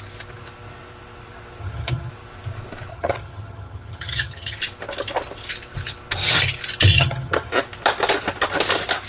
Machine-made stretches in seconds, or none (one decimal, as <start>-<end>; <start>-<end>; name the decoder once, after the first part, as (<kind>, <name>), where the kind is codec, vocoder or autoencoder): 1.6-2.1 (vocoder, HiFi-GAN); 2.9-4.6; 6.9-7.5